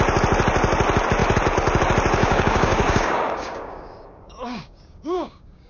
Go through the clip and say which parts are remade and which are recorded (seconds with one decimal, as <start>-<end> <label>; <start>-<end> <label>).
0.0-2.2 recorded; 2.2-5.7 remade